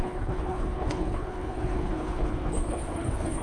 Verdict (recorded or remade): remade